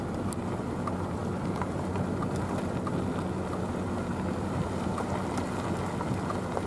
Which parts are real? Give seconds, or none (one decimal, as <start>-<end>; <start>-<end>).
0.0-6.7